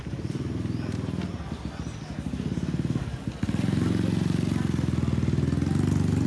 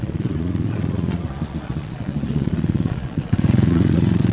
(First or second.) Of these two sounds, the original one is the first